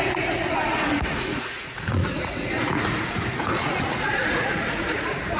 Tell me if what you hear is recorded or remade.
remade